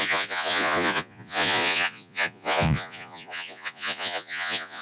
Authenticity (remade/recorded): remade